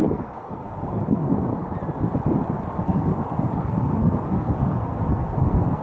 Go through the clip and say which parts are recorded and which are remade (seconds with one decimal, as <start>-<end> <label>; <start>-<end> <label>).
0.0-1.5 remade; 1.5-2.7 recorded; 2.7-3.1 remade; 3.1-3.6 recorded; 3.6-5.8 remade